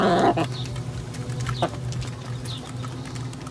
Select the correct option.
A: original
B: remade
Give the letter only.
A